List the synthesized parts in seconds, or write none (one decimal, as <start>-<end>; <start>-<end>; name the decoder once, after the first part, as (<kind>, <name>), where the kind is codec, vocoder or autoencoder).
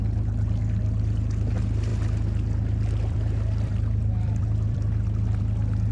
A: 1.9-5.4 (vocoder, BigVGAN v2)